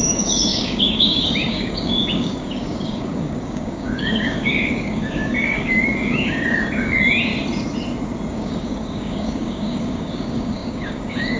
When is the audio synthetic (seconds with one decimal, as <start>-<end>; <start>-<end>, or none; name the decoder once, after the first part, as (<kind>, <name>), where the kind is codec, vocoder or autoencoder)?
0.0-7.3 (codec, DAC); 8.3-11.4